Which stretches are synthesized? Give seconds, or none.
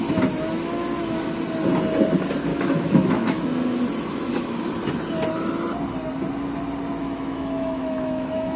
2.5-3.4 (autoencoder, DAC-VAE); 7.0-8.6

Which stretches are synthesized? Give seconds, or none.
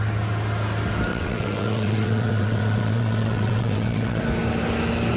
1.1-4.2 (vocoder, WaveNeXt)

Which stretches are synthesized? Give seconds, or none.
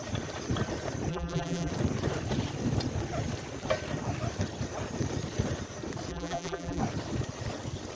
1.1-1.7 (vocoder, BigVGAN v2); 6.1-6.8